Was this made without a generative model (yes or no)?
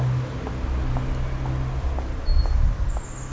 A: yes